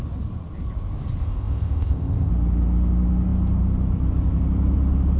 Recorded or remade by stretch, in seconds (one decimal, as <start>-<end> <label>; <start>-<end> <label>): 0.0-1.2 recorded; 1.2-2.3 remade; 2.3-5.2 recorded